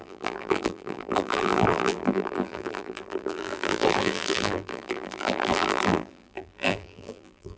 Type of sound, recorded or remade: remade